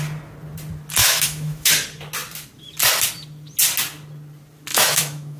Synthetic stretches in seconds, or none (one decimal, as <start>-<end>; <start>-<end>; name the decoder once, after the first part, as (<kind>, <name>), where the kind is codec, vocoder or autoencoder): 1.0-1.7 (autoencoder, DAC-VAE); 4.7-5.4